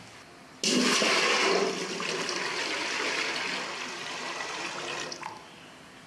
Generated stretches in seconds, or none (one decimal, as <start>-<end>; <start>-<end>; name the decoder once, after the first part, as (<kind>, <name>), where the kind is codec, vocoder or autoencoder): none